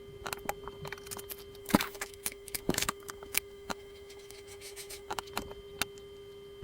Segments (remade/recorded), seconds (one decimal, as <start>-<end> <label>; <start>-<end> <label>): 0.0-1.6 recorded; 1.6-5.3 remade; 5.3-6.6 recorded